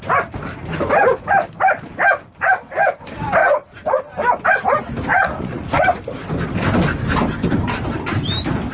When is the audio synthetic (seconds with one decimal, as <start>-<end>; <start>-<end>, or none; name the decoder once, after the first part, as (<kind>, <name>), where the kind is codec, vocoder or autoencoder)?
3.4-4.0 (vocoder, Vocos); 5.1-6.0